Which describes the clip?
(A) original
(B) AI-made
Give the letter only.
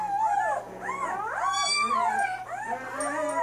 A